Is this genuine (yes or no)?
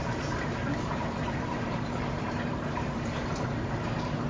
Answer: no